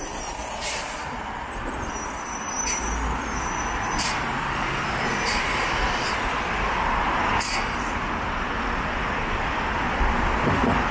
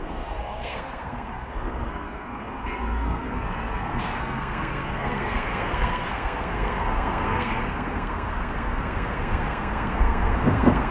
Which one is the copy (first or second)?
second